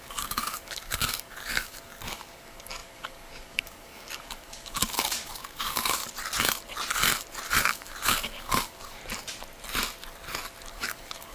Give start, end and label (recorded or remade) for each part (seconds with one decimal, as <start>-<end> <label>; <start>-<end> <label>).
0.0-6.0 remade; 6.0-7.6 recorded; 7.6-9.0 remade; 9.0-10.7 recorded; 10.7-11.3 remade